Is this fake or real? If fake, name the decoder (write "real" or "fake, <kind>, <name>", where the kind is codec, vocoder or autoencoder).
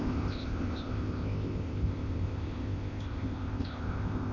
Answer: fake, codec, ZipCodec